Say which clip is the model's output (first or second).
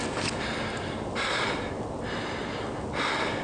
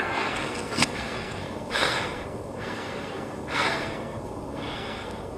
second